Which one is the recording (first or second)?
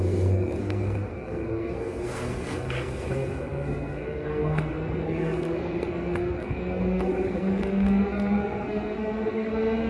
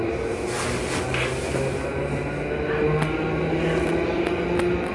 second